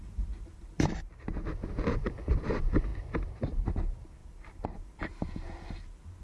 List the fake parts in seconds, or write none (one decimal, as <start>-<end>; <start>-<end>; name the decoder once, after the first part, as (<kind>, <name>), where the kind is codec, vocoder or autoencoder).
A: 0.0-1.1 (vocoder, BigVGAN v2); 4.2-5.0